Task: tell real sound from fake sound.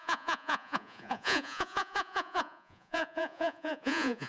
fake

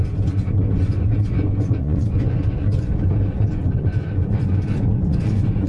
fake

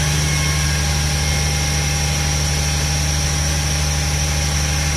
real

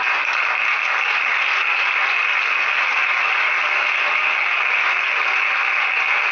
real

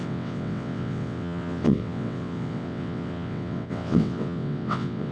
fake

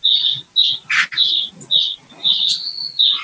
real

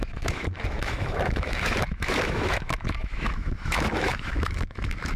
fake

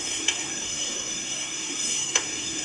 fake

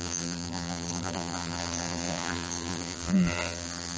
fake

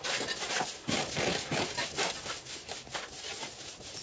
real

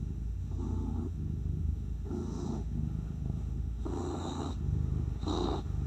fake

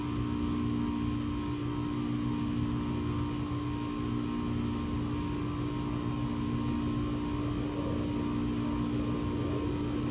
real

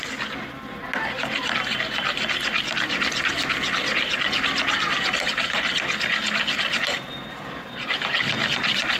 real